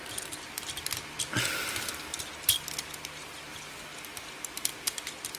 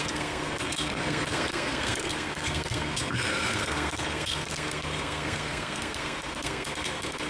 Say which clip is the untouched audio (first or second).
first